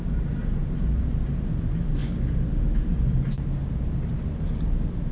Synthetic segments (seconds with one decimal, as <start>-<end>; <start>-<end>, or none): 0.6-1.2